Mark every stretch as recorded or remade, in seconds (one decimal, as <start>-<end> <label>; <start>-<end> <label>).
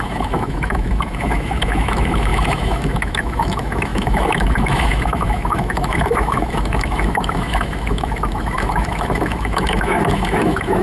0.0-10.8 remade